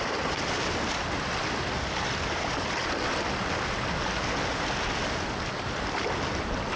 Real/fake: real